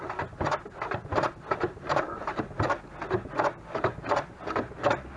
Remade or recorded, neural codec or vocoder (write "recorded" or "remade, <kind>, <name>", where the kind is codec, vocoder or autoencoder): recorded